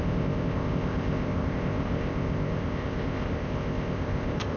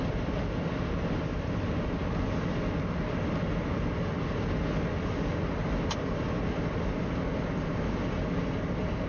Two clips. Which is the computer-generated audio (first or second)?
first